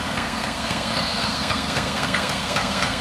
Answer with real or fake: fake